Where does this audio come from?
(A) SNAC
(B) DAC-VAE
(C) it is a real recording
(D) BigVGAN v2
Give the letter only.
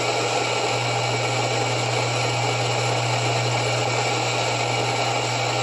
C